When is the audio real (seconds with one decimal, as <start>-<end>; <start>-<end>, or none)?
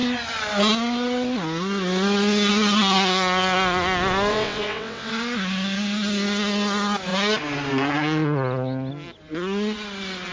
0.0-4.3; 5.1-10.3